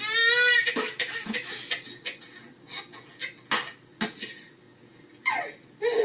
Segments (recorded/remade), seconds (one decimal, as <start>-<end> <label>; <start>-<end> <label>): 0.0-0.7 recorded; 0.7-1.7 remade; 1.7-6.0 recorded